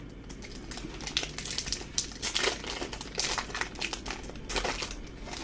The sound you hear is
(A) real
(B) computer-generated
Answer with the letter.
A